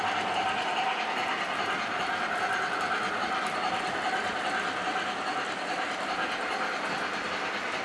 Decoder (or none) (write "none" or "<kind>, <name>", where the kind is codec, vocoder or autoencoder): none